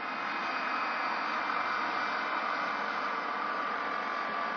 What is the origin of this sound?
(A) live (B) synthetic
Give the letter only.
A